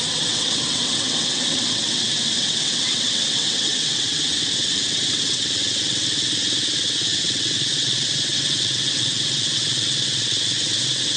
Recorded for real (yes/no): no